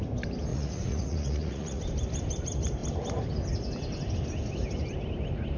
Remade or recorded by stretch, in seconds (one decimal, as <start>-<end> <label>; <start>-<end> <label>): 0.0-0.5 recorded; 0.5-1.8 remade; 1.8-5.6 recorded